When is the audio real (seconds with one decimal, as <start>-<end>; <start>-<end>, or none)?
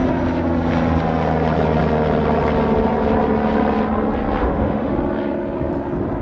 0.0-4.4; 4.9-6.2